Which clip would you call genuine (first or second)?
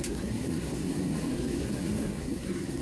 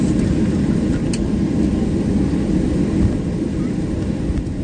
second